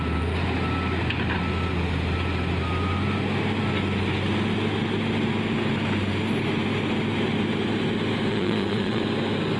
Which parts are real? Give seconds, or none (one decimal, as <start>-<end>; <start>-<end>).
0.0-8.3; 9.0-9.6